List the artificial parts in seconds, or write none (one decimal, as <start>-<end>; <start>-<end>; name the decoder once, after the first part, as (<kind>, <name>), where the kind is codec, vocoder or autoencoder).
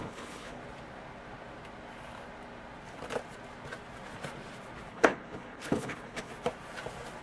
0.0-0.6 (codec, HILCodec); 4.9-6.3